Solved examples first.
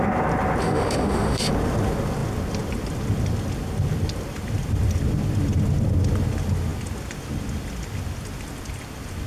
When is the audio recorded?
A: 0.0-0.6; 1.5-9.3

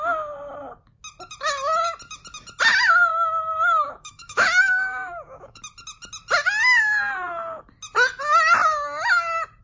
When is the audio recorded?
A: 0.0-3.1; 5.6-9.6

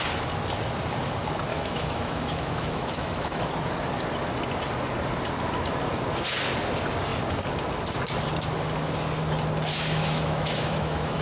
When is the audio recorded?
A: 0.0-1.5; 3.5-9.7

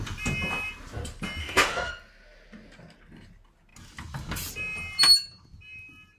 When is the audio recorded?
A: 0.0-1.4; 1.9-6.2

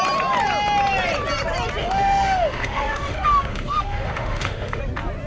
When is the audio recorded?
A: 0.0-1.8; 4.8-5.3

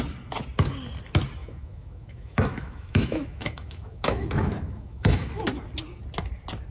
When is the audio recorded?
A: 0.0-1.4; 5.4-6.7

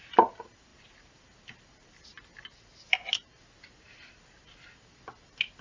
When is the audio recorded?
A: 0.0-5.6

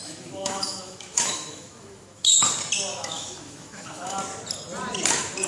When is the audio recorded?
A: 2.3-2.9; 4.2-5.5